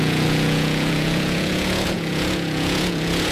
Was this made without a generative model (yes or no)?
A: no